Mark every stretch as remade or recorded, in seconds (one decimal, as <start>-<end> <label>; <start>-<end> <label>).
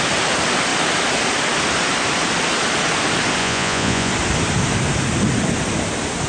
0.0-3.4 recorded; 3.4-4.1 remade; 4.1-6.3 recorded